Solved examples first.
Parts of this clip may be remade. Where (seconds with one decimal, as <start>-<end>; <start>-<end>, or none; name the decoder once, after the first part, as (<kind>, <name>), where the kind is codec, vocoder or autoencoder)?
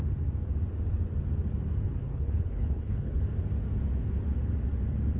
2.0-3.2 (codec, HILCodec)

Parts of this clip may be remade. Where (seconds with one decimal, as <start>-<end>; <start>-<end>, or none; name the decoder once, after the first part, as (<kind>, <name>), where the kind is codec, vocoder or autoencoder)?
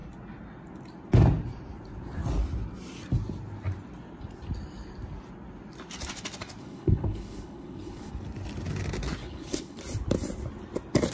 6.6-8.1 (codec, HILCodec); 9.2-9.8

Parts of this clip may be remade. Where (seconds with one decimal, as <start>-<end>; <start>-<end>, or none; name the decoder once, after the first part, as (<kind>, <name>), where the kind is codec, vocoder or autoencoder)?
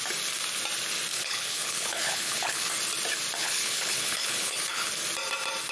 1.1-2.7 (codec, HILCodec); 3.4-4.9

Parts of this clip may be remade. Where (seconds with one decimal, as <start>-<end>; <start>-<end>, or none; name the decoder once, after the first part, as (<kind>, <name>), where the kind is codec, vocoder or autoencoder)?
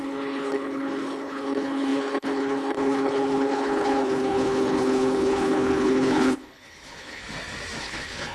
0.0-7.2 (codec, HILCodec); 7.8-8.3